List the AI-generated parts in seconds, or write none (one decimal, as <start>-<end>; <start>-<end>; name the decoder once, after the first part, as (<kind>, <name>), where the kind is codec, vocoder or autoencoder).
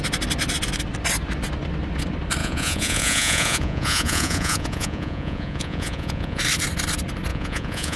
2.4-6.4 (vocoder, Vocos); 7.3-8.0